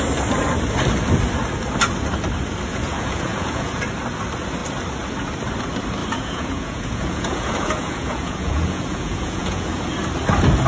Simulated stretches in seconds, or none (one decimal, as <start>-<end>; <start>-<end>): 2.7-3.8; 6.0-9.8